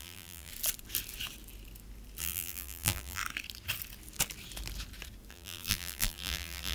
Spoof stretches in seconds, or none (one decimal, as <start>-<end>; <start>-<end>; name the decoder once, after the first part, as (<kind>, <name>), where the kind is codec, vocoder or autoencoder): 0.0-0.5 (vocoder, BigVGAN v2); 2.2-3.2; 5.3-6.7